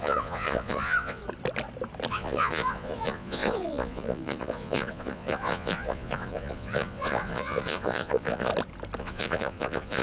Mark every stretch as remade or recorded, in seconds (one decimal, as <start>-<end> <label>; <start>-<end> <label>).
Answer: 0.0-1.2 remade; 1.2-2.1 recorded; 2.1-8.5 remade; 8.5-9.0 recorded; 9.0-10.0 remade